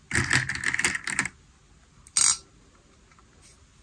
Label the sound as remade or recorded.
recorded